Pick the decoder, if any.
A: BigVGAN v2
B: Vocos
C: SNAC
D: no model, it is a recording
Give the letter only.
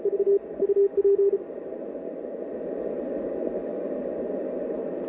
D